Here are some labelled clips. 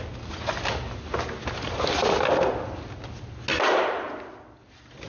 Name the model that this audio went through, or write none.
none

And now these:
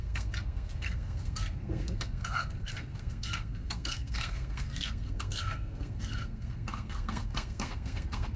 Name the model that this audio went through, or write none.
codec, SNAC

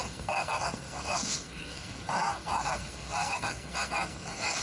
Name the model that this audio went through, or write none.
codec, SNAC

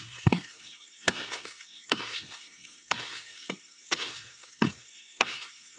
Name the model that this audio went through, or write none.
codec, SNAC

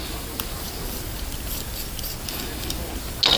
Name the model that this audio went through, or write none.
none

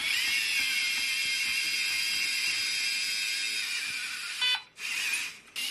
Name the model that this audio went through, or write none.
none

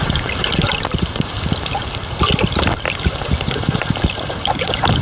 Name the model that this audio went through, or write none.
none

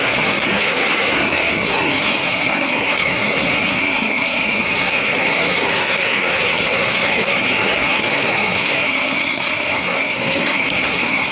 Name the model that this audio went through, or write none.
codec, SNAC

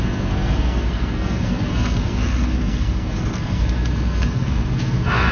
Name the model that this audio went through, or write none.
codec, SNAC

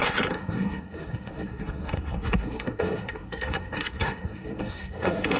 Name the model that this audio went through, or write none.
codec, SNAC